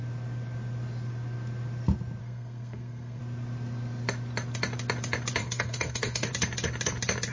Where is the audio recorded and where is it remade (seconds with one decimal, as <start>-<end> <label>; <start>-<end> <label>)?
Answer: 0.0-2.2 recorded; 2.2-3.2 remade; 3.2-5.4 recorded; 5.4-6.3 remade; 6.3-7.3 recorded